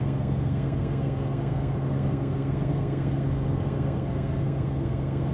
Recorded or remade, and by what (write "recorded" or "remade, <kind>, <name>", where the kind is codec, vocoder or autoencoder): remade, codec, SNAC